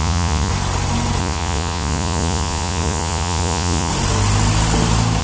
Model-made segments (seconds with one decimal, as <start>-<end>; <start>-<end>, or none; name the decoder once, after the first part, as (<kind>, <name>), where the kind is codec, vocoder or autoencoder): 0.0-0.5 (vocoder, Vocos); 1.2-3.9

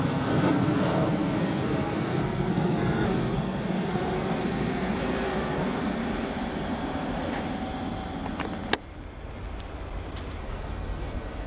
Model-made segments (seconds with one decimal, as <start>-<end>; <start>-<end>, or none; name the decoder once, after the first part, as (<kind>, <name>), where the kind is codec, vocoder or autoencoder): 0.0-6.0 (codec, SNAC); 10.4-11.5